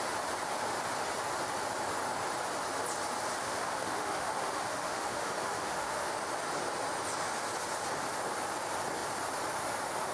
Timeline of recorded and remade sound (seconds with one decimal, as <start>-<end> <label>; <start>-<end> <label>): 0.0-3.4 recorded; 3.4-6.1 remade; 6.1-10.1 recorded